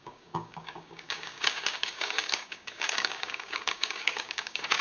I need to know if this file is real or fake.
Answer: fake